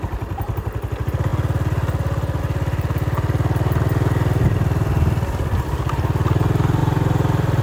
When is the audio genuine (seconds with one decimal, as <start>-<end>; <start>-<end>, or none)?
0.0-6.8